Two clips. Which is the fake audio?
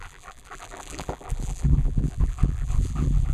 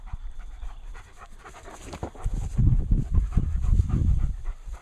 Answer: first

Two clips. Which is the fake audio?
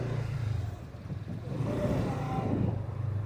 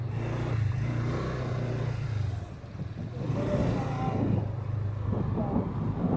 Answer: first